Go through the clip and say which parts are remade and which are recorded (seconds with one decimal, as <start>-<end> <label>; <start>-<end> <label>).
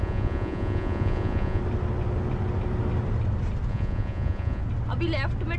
0.0-1.6 remade; 1.6-3.7 recorded; 3.7-4.6 remade; 4.6-5.6 recorded